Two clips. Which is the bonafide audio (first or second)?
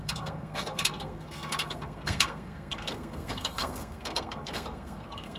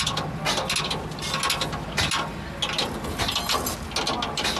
second